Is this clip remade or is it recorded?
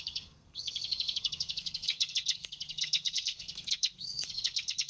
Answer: remade